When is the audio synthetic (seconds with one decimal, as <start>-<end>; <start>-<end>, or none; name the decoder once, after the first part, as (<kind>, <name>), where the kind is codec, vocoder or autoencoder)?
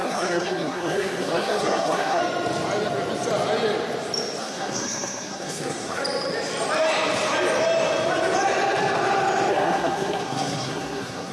0.0-2.2 (codec, SNAC); 4.4-6.0; 9.5-11.3